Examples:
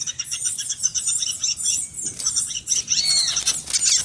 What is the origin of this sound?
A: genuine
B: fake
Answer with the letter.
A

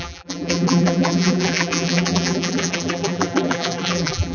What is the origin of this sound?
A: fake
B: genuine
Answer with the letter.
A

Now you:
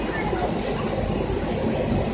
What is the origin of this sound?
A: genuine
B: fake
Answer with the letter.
A